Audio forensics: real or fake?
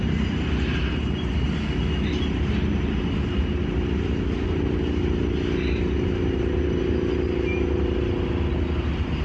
real